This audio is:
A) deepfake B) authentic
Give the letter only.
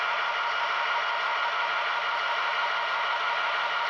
B